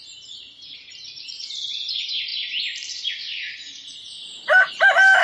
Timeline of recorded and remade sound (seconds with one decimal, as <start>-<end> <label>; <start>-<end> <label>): 0.0-5.2 remade